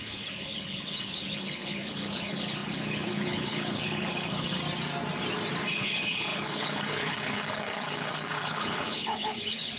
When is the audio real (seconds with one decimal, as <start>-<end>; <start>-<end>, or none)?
4.6-5.7

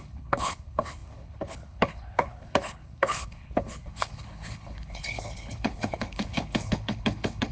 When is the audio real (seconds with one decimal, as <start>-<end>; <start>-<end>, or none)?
none

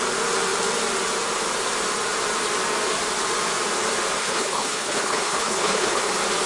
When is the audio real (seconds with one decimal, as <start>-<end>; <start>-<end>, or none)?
0.0-4.2; 6.0-6.5

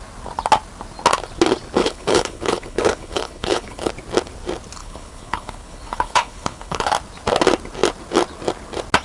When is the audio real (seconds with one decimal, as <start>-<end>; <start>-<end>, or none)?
0.0-1.8; 3.9-4.8; 6.9-9.0

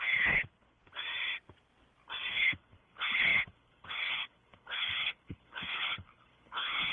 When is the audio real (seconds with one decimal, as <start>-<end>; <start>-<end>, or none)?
0.8-2.3

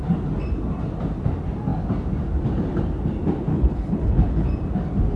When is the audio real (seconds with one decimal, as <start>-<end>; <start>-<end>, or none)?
0.0-3.5; 4.5-5.2

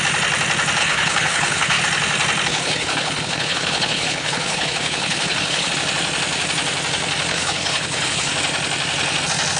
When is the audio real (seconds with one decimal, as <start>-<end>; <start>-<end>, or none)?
0.0-0.8; 1.8-2.5; 5.7-7.3; 8.3-9.6

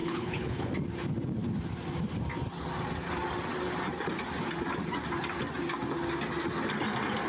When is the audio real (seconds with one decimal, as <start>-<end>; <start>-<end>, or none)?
0.7-7.3